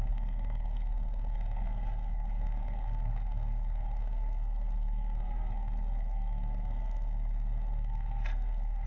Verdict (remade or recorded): remade